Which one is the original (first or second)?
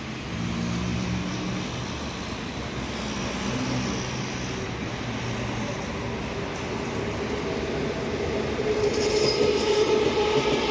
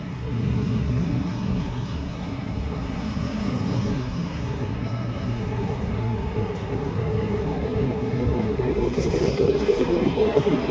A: first